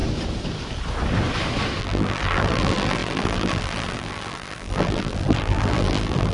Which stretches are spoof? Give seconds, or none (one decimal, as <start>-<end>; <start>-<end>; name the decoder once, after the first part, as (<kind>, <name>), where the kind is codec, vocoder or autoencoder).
1.8-6.3 (vocoder, BigVGAN v2)